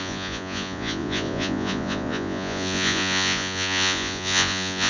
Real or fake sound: fake